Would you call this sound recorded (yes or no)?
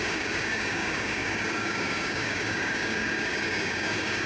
no